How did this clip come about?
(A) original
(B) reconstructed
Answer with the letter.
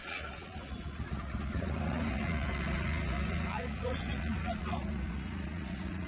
B